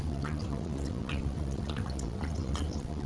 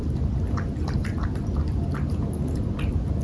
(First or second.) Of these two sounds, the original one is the second